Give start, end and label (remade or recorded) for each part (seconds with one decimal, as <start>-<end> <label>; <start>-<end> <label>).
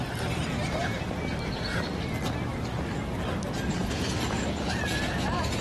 0.0-3.8 recorded; 3.8-5.6 remade